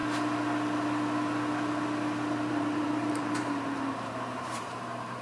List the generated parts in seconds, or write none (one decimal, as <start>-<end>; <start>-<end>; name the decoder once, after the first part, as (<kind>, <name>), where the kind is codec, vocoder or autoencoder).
2.5-5.2 (vocoder, BigVGAN v2)